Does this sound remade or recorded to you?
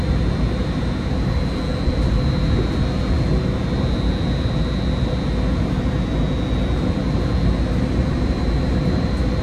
recorded